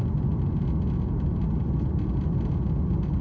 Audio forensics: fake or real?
real